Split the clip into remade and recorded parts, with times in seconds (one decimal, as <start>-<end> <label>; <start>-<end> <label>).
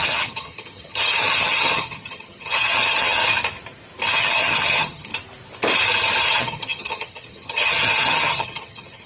0.0-3.2 remade; 3.2-4.1 recorded; 4.1-5.1 remade; 5.1-6.2 recorded; 6.2-9.1 remade